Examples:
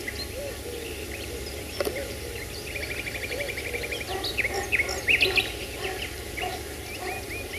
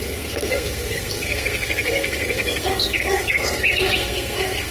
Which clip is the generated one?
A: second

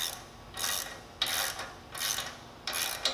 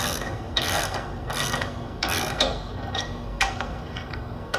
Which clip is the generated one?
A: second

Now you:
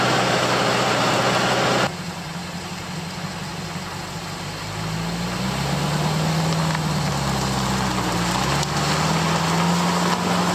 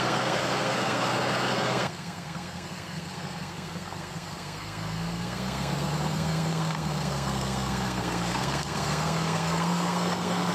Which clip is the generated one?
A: second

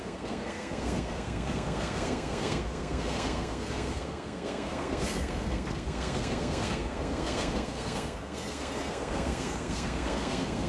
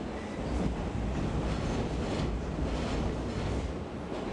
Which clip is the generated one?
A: first